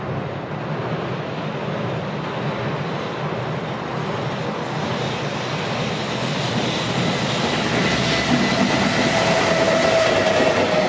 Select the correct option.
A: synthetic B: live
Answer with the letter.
B